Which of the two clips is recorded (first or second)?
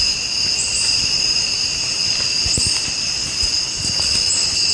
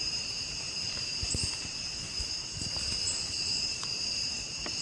first